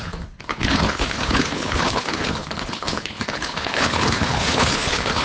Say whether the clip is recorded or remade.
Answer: remade